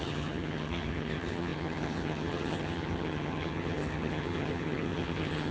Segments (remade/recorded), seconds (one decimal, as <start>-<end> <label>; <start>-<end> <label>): 0.0-5.5 remade

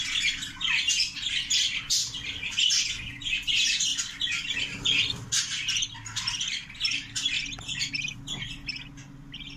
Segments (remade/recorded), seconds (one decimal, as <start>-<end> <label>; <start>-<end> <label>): 0.0-9.6 recorded

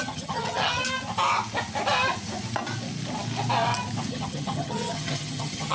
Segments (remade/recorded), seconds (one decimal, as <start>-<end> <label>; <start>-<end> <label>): 0.0-0.8 remade; 0.8-4.1 recorded; 4.1-5.7 remade

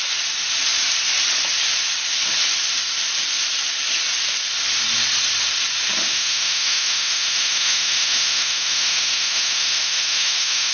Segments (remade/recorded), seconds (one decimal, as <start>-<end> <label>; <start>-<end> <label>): 0.0-6.1 recorded; 6.1-10.7 remade

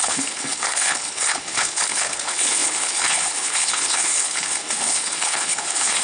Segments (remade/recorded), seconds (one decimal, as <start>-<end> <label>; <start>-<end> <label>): 0.0-6.0 remade